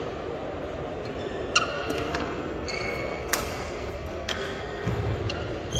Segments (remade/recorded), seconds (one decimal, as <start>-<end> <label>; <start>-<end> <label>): 0.0-1.7 recorded; 1.7-5.2 remade; 5.2-5.8 recorded